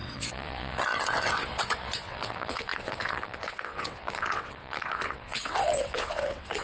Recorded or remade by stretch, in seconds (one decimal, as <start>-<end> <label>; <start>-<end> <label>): 0.0-6.6 remade